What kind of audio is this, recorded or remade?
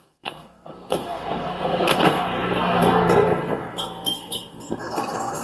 remade